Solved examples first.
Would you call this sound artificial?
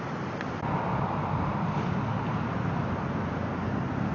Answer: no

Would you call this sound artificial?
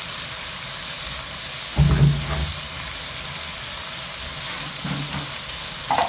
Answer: no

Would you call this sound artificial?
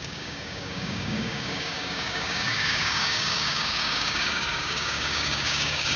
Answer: yes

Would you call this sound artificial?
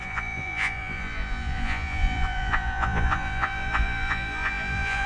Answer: yes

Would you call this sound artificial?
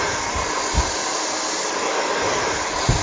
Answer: no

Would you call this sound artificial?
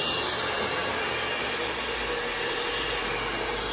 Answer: no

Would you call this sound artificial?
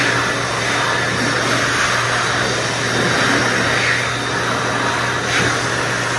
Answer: no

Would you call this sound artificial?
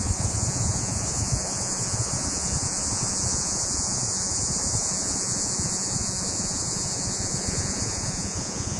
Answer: yes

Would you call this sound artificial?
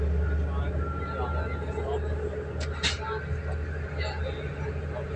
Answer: no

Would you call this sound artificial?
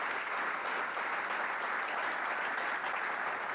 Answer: no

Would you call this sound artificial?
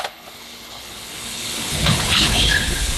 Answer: yes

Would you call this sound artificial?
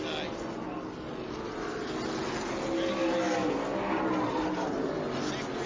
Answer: no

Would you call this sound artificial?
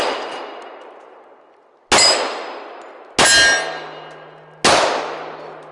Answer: no